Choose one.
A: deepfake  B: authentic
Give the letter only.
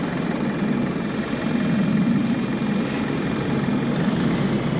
B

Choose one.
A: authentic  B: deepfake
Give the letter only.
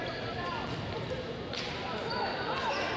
A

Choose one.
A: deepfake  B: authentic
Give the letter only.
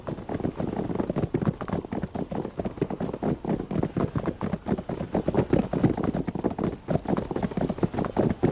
B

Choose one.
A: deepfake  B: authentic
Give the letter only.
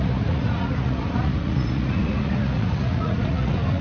A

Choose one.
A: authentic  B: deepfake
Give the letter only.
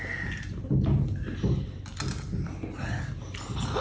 A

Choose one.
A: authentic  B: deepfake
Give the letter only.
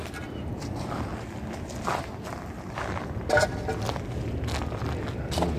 A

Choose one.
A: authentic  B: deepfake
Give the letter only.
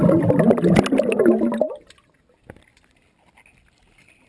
A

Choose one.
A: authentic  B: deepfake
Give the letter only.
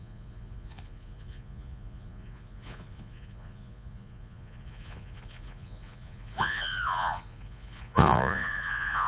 B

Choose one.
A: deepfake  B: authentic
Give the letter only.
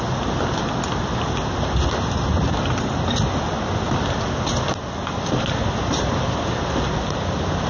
B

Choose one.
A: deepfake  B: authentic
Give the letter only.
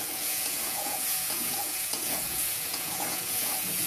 A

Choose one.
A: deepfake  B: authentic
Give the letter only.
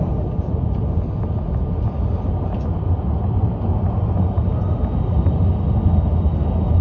B